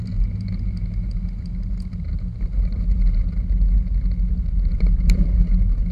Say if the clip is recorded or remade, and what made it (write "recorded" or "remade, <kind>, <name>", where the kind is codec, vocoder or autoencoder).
recorded